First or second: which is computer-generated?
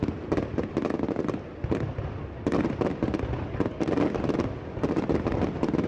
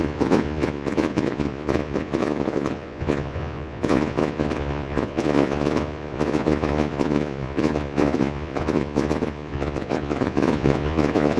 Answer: second